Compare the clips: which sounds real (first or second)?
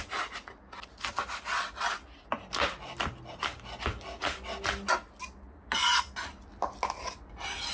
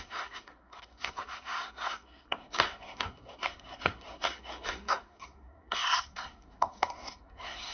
first